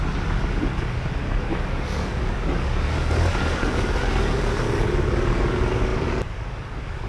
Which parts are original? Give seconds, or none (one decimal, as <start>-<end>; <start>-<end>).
none